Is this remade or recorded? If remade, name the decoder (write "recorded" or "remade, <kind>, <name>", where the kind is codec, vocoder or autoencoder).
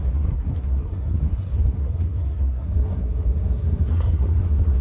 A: remade, codec, SNAC